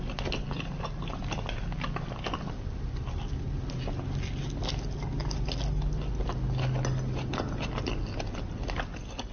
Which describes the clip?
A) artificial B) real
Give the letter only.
B